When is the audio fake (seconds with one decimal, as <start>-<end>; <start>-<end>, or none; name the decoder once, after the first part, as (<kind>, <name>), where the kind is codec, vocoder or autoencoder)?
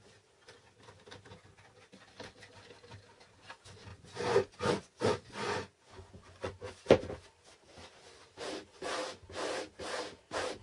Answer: 3.9-6.8 (vocoder, Vocos)